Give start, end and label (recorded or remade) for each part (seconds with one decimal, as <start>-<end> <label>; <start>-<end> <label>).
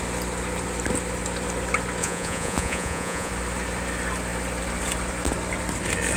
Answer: 0.0-2.0 recorded; 2.0-3.3 remade; 3.3-6.2 recorded